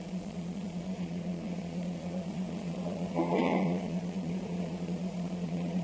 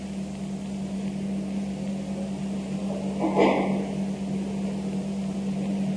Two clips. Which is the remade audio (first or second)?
first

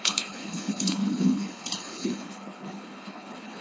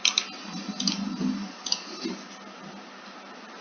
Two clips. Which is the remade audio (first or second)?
first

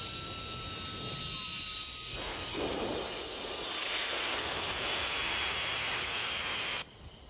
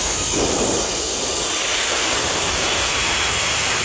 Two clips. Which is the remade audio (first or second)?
second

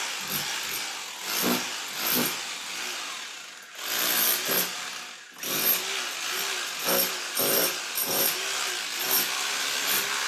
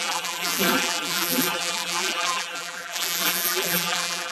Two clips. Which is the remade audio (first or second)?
second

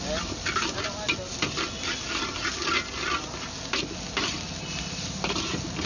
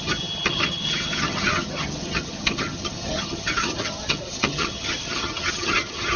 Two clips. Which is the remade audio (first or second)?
second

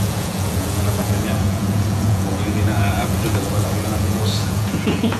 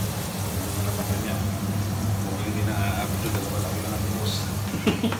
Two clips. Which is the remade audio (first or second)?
first